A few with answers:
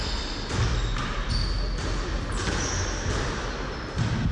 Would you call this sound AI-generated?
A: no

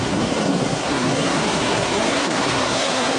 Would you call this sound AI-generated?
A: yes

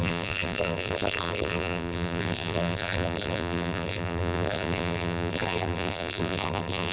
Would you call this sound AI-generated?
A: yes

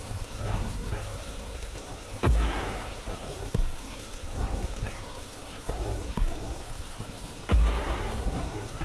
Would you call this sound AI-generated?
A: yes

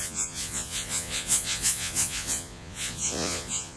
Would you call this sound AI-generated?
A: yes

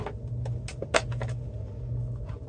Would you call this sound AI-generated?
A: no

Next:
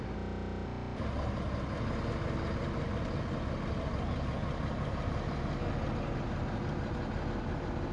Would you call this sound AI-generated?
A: no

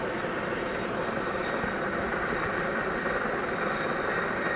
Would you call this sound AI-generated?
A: no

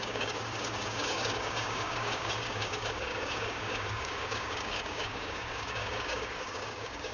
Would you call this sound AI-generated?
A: yes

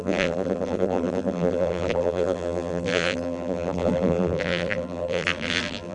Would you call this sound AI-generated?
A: yes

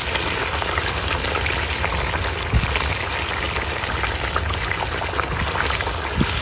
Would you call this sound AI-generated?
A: no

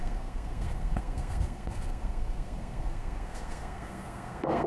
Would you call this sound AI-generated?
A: yes